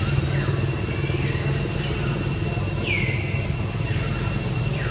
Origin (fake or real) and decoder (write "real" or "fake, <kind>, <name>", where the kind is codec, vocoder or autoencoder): real